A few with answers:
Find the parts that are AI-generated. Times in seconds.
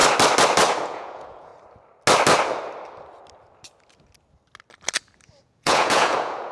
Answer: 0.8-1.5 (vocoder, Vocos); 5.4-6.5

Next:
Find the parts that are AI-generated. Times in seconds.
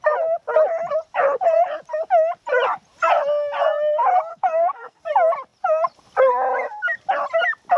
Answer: 4.3-5.0 (codec, SNAC)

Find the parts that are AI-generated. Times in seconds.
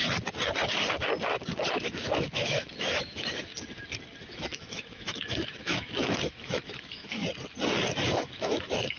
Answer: 1.7-3.5 (autoencoder, DAC-VAE); 4.2-7.2; 8.1-9.0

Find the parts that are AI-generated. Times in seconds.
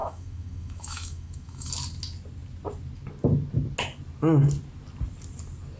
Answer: 0.0-1.7 (autoencoder, DAC-VAE)